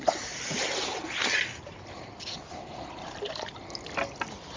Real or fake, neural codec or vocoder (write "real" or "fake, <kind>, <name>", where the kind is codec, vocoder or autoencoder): fake, vocoder, BigVGAN v2